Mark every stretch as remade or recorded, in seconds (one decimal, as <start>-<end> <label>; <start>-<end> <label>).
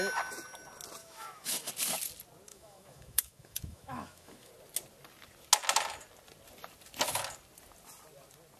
0.0-1.0 recorded; 1.0-1.7 remade; 1.7-2.5 recorded; 2.5-4.5 remade; 4.5-8.6 recorded